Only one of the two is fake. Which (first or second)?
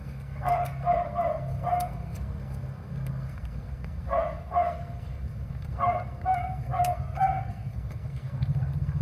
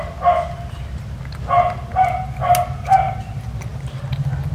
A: first